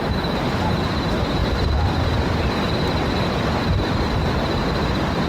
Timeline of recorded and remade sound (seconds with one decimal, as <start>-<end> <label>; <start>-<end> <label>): 0.0-1.4 remade; 1.4-4.6 recorded; 4.6-5.3 remade